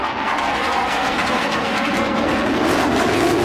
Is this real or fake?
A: fake